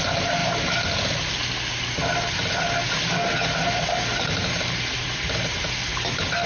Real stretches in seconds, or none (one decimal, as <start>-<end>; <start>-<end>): 0.0-4.1; 5.7-6.5